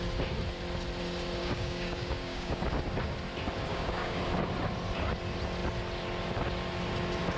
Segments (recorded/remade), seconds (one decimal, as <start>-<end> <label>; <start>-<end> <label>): 0.0-1.4 recorded; 1.4-2.7 remade; 2.7-3.7 recorded; 3.7-4.2 remade; 4.2-7.4 recorded